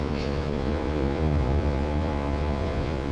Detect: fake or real fake